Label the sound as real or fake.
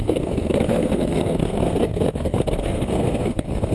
fake